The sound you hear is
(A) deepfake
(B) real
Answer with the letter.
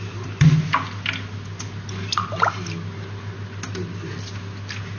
B